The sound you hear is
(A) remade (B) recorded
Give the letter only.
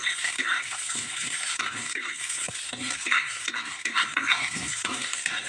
A